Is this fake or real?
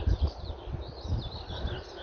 real